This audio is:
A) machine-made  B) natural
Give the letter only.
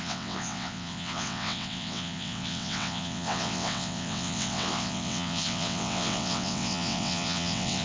A